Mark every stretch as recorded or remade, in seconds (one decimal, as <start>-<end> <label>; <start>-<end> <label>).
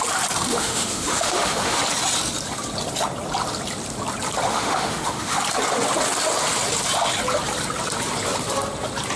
0.0-0.5 recorded; 0.5-1.8 remade; 1.8-4.5 recorded; 4.5-5.4 remade; 5.4-9.2 recorded